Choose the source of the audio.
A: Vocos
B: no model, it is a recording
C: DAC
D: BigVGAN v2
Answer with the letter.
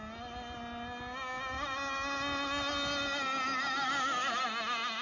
B